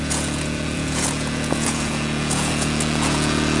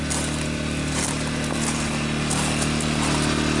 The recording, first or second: second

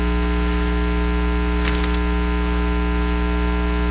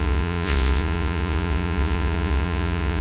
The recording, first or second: first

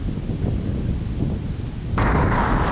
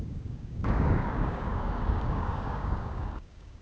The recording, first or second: first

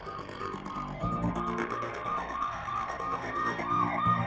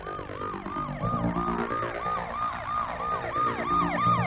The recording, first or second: second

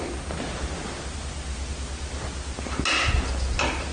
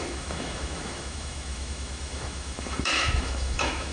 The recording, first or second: first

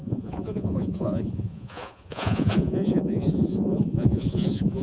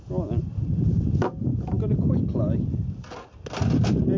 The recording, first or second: second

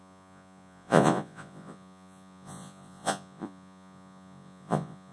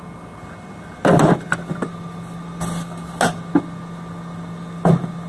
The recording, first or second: second